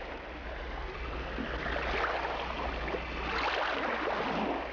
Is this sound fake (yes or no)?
no